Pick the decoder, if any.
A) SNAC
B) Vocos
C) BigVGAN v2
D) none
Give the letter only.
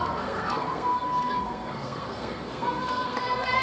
A